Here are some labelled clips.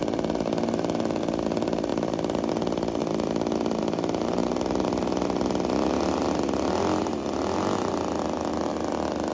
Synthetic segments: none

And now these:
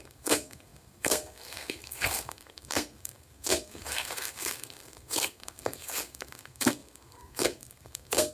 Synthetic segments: 0.0-8.3 (codec, SNAC)

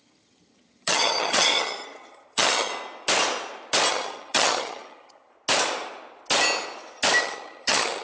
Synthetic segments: 0.0-2.7 (vocoder, HiFi-GAN); 3.9-5.3; 7.2-8.0

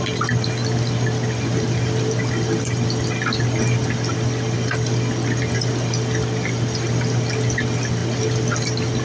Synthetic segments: none